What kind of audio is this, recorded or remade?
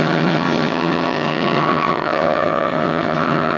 remade